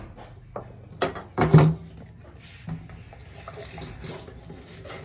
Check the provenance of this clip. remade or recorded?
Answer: recorded